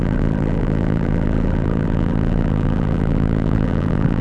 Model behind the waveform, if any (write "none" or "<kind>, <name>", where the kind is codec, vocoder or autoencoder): vocoder, BigVGAN v2